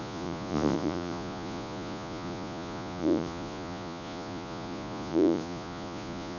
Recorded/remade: remade